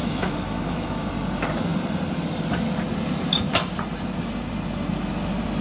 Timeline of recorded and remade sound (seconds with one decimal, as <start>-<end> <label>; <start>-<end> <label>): 0.0-1.1 remade; 1.1-5.6 recorded